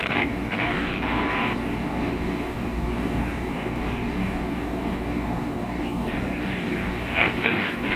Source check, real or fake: fake